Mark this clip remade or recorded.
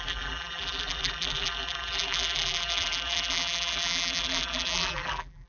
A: remade